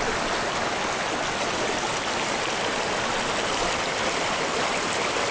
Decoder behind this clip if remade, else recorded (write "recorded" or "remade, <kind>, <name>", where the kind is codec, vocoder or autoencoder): recorded